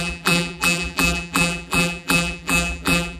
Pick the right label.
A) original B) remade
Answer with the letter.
B